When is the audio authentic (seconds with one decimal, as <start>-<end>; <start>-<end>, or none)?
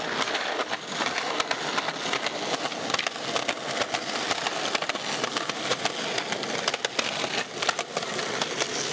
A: 0.0-8.9